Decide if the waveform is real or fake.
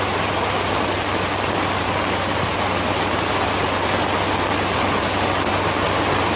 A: real